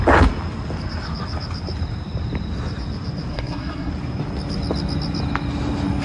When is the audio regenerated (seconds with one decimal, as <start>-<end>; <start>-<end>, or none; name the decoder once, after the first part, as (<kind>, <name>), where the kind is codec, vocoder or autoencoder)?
3.3-3.9 (codec, SNAC)